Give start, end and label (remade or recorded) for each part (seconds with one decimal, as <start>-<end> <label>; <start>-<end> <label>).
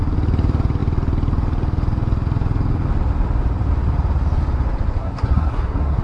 0.0-5.0 recorded; 5.0-6.0 remade